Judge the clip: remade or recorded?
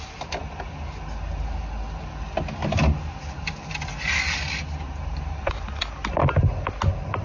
recorded